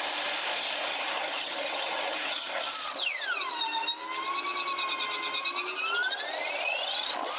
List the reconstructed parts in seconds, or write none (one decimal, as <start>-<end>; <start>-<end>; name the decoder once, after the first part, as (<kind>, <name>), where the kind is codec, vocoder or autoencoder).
0.9-2.6 (vocoder, HiFi-GAN)